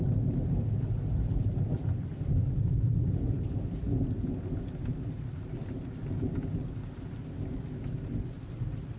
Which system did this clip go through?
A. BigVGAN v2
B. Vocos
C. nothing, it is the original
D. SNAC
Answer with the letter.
C